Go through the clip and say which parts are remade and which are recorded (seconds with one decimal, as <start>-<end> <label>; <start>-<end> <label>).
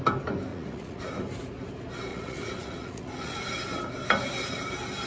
0.0-0.5 recorded; 0.5-1.0 remade; 1.0-2.1 recorded; 2.1-3.5 remade; 3.5-5.1 recorded